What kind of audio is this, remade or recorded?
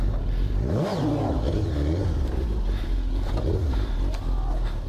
recorded